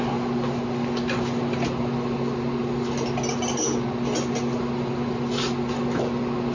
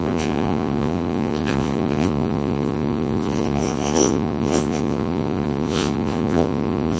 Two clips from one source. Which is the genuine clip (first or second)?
first